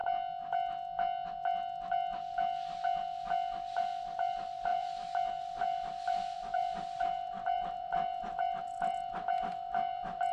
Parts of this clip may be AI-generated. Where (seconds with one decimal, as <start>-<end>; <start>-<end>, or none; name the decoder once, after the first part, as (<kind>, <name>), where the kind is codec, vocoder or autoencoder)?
3.8-10.3 (vocoder, BigVGAN v2)

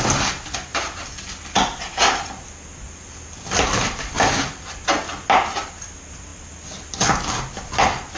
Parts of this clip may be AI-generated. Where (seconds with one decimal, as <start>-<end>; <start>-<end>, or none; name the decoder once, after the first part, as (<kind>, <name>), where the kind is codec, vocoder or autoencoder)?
0.7-4.8 (vocoder, BigVGAN v2); 6.3-7.4

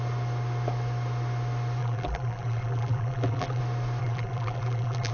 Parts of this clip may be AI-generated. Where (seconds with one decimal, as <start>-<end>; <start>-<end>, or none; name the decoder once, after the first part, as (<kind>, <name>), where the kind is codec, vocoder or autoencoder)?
1.8-3.6 (vocoder, BigVGAN v2); 4.0-5.1

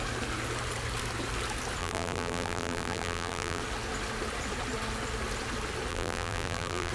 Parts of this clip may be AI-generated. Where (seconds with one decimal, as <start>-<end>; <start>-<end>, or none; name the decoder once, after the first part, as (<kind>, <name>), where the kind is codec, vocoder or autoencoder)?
1.8-3.6 (vocoder, BigVGAN v2); 5.9-6.9

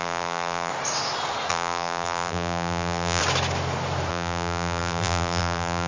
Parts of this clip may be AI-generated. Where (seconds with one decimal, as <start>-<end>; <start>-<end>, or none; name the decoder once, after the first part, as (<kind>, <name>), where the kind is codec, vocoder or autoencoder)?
0.0-0.7 (vocoder, BigVGAN v2); 1.5-3.2; 4.1-5.9

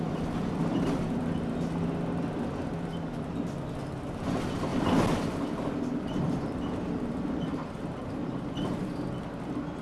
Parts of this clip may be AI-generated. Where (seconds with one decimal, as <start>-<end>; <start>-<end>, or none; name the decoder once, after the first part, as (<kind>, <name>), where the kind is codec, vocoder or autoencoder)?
4.7-9.4 (vocoder, BigVGAN v2)

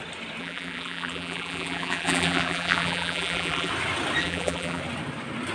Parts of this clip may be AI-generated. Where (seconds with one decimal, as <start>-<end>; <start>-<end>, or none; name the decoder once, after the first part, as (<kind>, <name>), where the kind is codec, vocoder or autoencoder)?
0.4-3.7 (vocoder, BigVGAN v2); 4.2-4.8

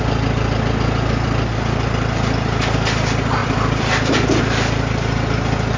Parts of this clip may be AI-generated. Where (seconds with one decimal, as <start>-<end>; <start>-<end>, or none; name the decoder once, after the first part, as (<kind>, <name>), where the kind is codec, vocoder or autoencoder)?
3.4-4.4 (vocoder, BigVGAN v2)